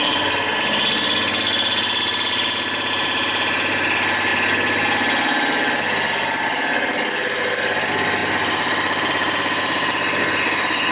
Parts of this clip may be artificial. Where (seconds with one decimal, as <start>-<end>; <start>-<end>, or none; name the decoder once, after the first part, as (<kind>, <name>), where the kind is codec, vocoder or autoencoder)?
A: none